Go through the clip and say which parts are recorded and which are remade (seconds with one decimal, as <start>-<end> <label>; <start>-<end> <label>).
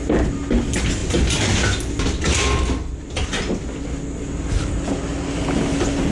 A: 0.0-6.1 recorded